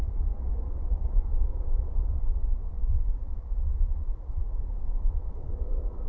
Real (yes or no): no